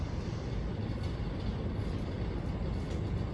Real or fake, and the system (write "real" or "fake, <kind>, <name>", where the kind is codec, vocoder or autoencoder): real